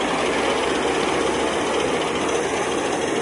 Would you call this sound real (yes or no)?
no